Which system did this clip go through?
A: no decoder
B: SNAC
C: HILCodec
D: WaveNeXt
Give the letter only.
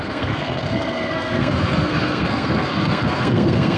B